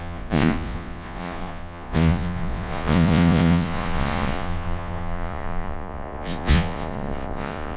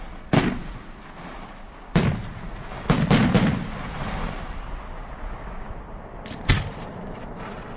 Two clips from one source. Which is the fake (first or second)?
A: first